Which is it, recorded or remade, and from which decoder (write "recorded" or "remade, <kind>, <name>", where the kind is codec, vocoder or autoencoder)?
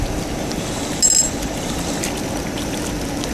recorded